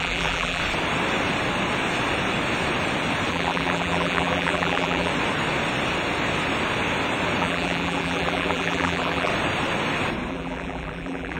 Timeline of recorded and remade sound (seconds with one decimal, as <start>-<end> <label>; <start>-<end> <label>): 0.0-0.6 remade; 0.6-3.3 recorded; 3.3-5.1 remade; 5.1-7.4 recorded; 7.4-9.3 remade; 9.3-10.3 recorded; 10.3-11.4 remade